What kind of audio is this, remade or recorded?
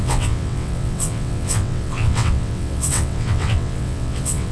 remade